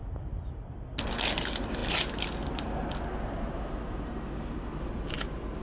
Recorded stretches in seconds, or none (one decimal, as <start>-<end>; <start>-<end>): 0.0-5.6